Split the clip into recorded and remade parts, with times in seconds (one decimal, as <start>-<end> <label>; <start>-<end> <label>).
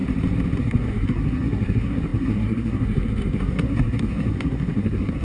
0.0-0.6 recorded; 0.6-5.2 remade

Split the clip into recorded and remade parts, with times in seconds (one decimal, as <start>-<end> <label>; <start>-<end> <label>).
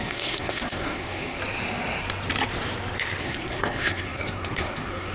0.0-1.4 remade; 1.4-3.2 recorded; 3.2-5.1 remade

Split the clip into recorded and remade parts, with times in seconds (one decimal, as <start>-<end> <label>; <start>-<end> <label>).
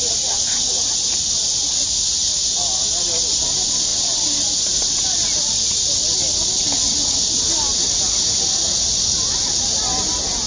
0.0-10.5 recorded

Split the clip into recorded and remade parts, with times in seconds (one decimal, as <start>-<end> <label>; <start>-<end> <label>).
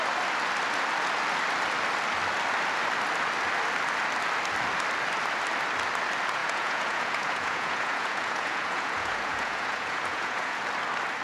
0.0-6.4 recorded; 6.4-10.6 remade; 10.6-11.2 recorded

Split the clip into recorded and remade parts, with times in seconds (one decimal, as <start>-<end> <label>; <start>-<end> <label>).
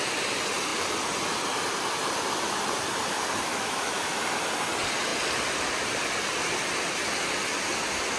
0.0-3.5 recorded; 3.5-4.2 remade; 4.2-8.2 recorded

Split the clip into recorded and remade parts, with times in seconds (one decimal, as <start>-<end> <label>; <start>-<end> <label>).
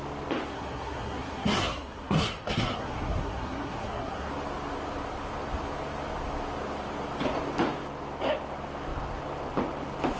0.0-0.5 recorded; 0.5-4.3 remade; 4.3-10.2 recorded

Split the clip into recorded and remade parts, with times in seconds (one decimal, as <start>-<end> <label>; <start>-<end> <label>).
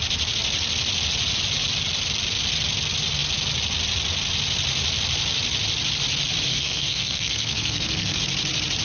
0.0-6.5 recorded; 6.5-8.2 remade; 8.2-8.8 recorded